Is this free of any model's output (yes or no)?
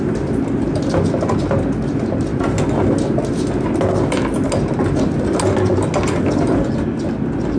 yes